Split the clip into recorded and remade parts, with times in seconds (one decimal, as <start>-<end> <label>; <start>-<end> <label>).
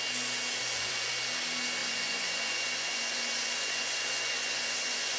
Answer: 0.0-0.6 recorded; 0.6-1.1 remade; 1.1-1.8 recorded; 1.8-5.2 remade